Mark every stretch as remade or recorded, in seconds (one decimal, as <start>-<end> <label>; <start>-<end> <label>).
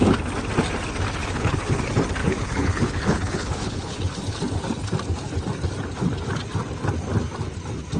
0.0-1.2 recorded; 1.2-1.8 remade; 1.8-2.2 recorded; 2.2-4.2 remade; 4.2-8.0 recorded